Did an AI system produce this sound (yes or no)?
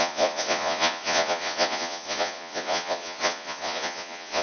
yes